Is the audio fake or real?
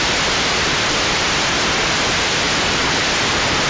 fake